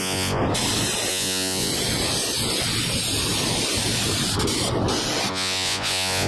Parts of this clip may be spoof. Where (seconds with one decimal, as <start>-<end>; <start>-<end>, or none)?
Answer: 0.0-0.4; 1.1-1.7; 5.3-6.3